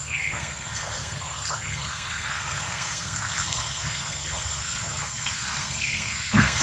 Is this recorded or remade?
remade